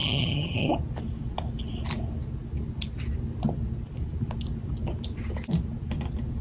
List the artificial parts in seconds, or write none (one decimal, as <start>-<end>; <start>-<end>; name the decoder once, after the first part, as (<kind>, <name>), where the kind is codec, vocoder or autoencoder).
0.0-0.7 (vocoder, HiFi-GAN)